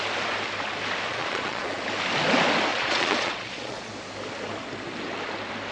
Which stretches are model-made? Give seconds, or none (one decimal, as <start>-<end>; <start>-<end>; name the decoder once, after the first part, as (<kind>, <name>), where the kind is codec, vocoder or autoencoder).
1.1-1.8 (vocoder, Vocos); 2.7-3.9